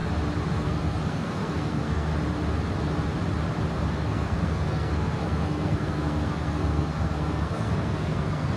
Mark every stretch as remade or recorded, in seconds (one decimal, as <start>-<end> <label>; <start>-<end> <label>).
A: 0.0-0.5 recorded; 0.5-2.1 remade; 2.1-3.9 recorded; 3.9-8.6 remade